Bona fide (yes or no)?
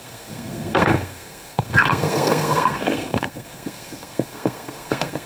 no